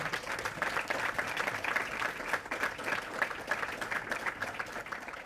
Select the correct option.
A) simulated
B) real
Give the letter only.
B